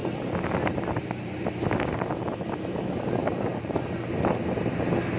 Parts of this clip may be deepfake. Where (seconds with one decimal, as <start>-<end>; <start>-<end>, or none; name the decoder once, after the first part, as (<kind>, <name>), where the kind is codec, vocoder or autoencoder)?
3.2-3.8 (vocoder, BigVGAN v2)

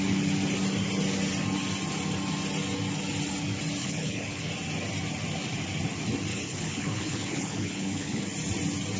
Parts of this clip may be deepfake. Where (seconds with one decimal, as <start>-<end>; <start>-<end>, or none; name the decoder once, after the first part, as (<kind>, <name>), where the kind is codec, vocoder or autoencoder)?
3.8-4.5 (codec, HILCodec); 6.3-8.2

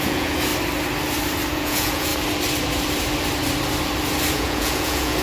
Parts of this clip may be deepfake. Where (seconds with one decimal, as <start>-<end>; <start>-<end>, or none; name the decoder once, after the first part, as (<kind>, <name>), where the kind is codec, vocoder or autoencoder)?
0.0-0.5 (vocoder, Vocos); 1.5-2.1; 4.3-5.2

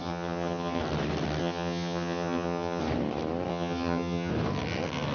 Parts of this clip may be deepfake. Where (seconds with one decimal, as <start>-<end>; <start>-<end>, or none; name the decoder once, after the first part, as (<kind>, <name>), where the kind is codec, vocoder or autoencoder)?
0.0-0.8 (vocoder, HiFi-GAN); 1.4-2.8; 3.5-4.3

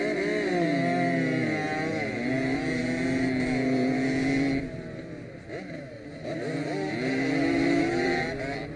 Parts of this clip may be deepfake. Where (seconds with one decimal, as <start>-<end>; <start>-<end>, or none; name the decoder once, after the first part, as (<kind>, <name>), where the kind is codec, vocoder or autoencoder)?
none

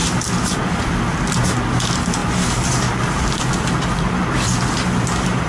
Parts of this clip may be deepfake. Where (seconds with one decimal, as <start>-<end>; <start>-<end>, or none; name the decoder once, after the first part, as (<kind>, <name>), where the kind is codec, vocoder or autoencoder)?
none

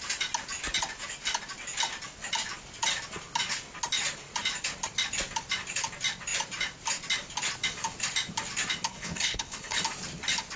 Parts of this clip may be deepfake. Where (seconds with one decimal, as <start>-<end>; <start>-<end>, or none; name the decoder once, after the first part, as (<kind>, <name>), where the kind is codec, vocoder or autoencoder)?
8.9-9.8 (codec, HILCodec)

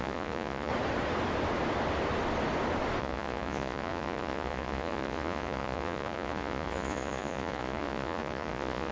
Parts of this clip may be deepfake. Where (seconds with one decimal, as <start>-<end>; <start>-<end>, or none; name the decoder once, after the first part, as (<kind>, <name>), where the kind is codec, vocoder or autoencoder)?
0.0-0.7 (vocoder, Vocos); 3.0-8.9